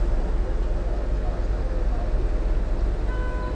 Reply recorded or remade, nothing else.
recorded